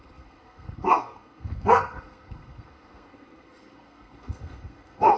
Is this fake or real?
fake